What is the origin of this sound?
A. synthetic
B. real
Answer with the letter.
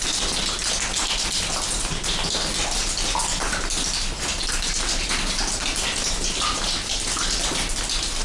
B